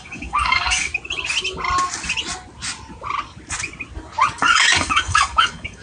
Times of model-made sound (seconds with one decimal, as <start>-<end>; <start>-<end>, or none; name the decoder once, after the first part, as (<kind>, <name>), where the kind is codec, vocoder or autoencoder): 0.0-0.9 (codec, DAC); 4.4-5.8